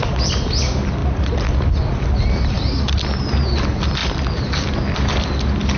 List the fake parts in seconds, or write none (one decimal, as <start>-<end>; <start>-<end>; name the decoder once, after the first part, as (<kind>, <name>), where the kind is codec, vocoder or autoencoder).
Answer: none